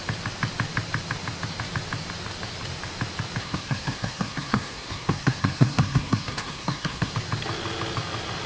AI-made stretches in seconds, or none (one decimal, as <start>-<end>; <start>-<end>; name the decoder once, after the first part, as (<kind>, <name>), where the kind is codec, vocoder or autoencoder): 3.4-7.1 (codec, SNAC)